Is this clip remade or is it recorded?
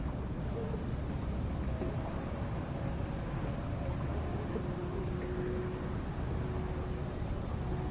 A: recorded